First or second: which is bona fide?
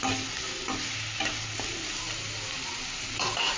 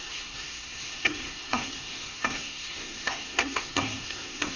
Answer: first